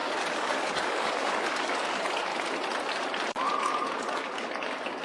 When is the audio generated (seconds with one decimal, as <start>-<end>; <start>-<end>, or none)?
0.0-2.3; 3.6-5.0

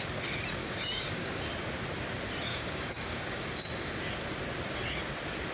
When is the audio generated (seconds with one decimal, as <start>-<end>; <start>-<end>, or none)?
0.6-1.4; 2.5-4.1

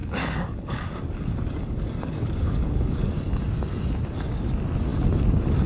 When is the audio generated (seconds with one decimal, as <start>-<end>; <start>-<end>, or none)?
0.0-3.4

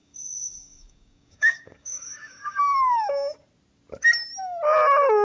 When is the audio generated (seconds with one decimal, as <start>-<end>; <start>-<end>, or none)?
0.0-3.1

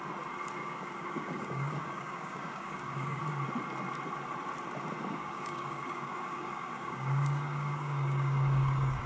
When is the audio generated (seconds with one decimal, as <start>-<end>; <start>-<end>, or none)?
0.6-3.2; 5.2-9.1

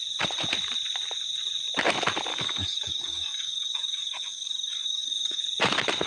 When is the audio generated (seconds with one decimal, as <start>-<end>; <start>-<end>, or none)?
2.3-5.4

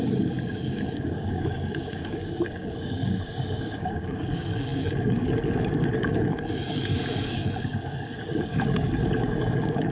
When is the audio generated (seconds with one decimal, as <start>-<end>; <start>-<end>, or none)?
0.0-9.9